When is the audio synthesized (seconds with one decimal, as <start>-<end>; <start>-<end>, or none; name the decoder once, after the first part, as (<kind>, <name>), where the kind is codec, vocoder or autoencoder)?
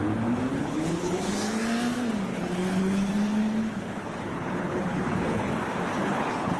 0.5-1.3 (codec, HILCodec); 2.3-3.1; 3.6-5.5; 6.0-6.6